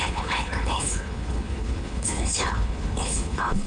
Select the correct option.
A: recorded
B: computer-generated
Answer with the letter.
B